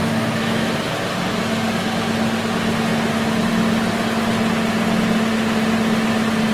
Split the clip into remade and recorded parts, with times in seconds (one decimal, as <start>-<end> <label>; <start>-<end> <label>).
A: 0.0-0.7 remade; 0.7-6.5 recorded